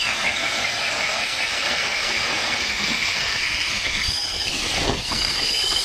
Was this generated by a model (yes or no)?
yes